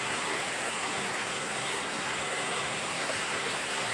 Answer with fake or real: fake